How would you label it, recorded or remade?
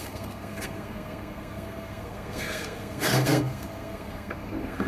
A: remade